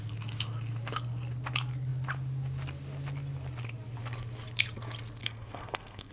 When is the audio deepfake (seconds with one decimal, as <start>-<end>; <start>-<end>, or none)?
5.2-6.1